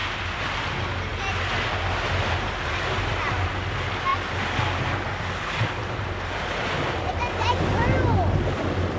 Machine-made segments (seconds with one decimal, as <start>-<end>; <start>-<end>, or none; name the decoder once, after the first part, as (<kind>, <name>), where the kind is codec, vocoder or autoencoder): 0.0-0.6 (vocoder, BigVGAN v2)